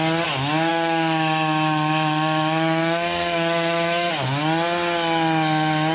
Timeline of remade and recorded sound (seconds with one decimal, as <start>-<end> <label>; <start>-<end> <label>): 0.0-0.7 recorded; 0.7-4.1 remade; 4.1-5.9 recorded